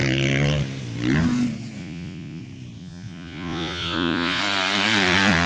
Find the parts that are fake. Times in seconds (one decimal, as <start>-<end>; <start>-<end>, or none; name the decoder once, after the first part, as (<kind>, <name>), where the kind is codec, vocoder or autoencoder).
1.8-2.4 (vocoder, Vocos); 2.8-4.4